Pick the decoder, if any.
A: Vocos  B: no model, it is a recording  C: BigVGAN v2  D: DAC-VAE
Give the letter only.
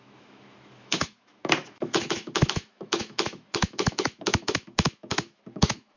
D